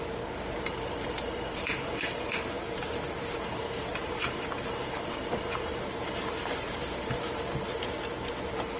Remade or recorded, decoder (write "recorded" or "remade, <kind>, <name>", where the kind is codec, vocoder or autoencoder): remade, vocoder, BigVGAN v2